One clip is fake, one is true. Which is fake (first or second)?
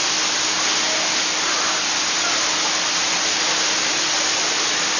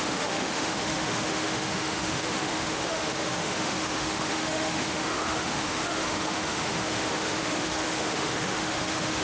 second